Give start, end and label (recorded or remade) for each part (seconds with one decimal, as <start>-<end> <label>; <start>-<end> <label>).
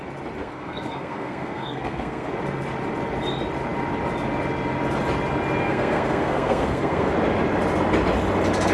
0.0-0.4 recorded; 0.4-2.3 remade; 2.3-5.6 recorded; 5.6-7.1 remade; 7.1-8.7 recorded